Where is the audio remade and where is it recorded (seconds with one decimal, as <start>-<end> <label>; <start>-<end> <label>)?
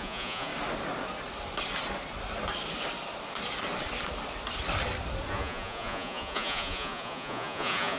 0.0-0.5 remade; 0.5-5.3 recorded; 5.3-8.0 remade